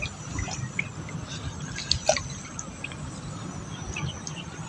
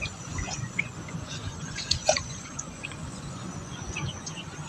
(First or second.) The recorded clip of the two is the first